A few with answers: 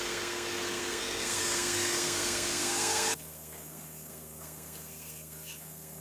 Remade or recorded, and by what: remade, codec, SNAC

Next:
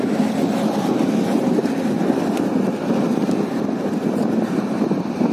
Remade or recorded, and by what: recorded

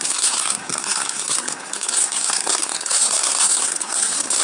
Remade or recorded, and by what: remade, codec, SNAC